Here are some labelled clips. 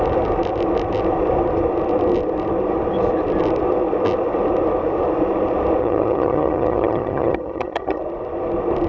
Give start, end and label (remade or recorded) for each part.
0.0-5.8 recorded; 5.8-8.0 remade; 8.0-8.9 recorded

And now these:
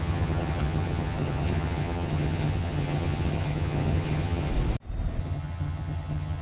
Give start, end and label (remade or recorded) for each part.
0.0-4.5 remade; 4.5-5.2 recorded; 5.2-6.4 remade

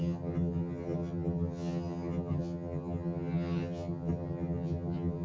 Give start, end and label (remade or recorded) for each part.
0.0-5.2 remade

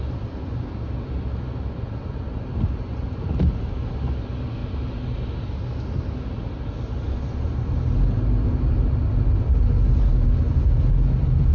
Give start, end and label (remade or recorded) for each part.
0.0-11.5 recorded

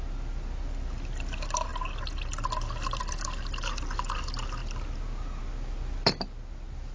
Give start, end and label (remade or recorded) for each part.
0.0-6.9 recorded

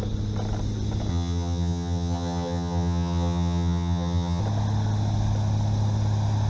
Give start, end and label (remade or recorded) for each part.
0.0-1.1 recorded; 1.1-4.4 remade; 4.4-6.5 recorded

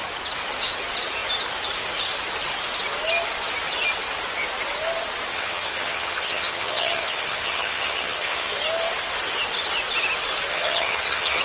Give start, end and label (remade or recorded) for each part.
0.0-5.3 recorded; 5.3-8.5 remade; 8.5-10.5 recorded; 10.5-11.4 remade

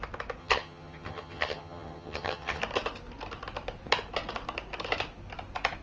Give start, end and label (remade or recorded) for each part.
0.0-0.4 recorded; 0.4-2.6 remade; 2.6-5.8 recorded